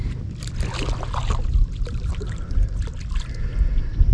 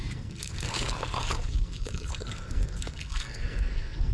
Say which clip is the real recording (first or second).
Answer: first